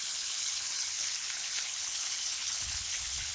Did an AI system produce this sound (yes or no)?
yes